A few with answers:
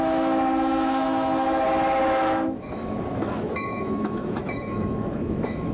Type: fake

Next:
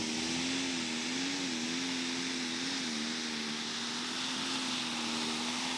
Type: real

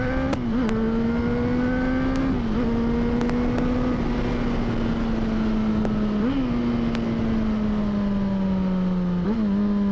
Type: real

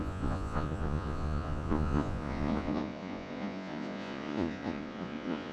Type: fake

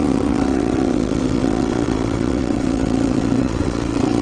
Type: fake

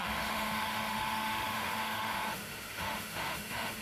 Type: fake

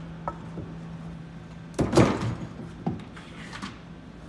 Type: real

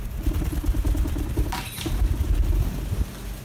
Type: real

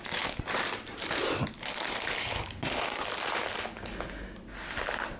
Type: real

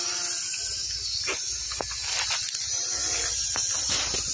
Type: real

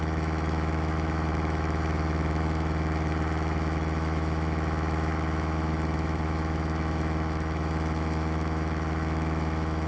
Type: fake